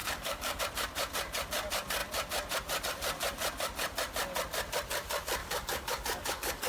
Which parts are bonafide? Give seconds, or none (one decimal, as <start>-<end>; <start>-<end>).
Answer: 0.6-5.4